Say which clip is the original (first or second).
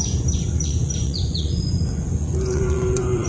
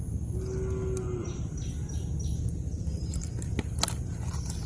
second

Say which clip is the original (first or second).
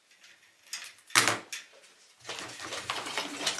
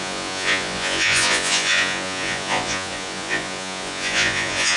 first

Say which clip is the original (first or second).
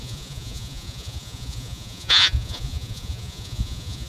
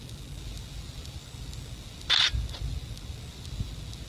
second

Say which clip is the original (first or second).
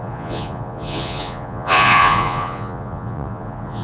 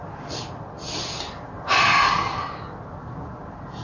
second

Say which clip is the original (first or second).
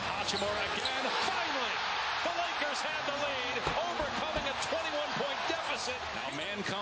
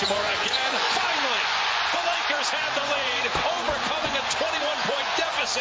first